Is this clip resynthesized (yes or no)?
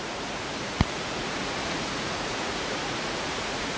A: yes